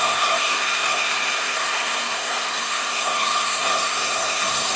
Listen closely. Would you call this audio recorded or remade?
remade